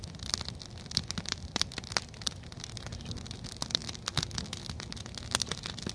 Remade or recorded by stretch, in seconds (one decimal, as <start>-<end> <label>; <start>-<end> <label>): 0.0-5.9 recorded